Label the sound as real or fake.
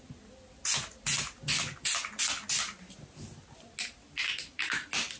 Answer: real